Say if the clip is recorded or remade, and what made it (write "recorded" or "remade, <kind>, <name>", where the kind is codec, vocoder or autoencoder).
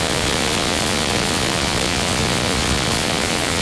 remade, vocoder, Vocos